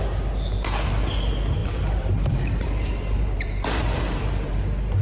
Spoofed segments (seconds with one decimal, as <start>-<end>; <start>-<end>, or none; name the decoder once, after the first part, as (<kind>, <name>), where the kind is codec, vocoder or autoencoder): 1.6-4.6 (vocoder, BigVGAN v2)